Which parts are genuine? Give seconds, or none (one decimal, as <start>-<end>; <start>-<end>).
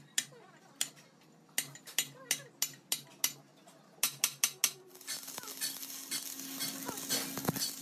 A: 0.0-7.8